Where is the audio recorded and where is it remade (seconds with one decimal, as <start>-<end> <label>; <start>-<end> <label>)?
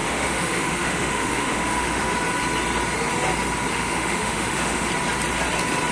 0.0-2.1 remade; 2.1-3.7 recorded; 3.7-4.9 remade; 4.9-5.9 recorded